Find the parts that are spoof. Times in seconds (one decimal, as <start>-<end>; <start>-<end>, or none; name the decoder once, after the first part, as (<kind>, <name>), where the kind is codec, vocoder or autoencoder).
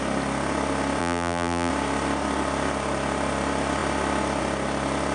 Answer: 1.0-1.7 (vocoder, BigVGAN v2)